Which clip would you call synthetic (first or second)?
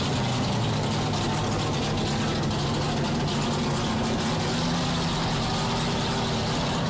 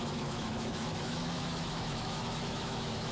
second